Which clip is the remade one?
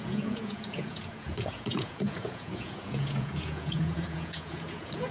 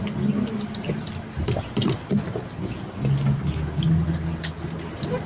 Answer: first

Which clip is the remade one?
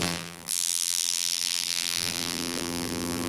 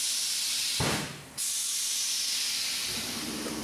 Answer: first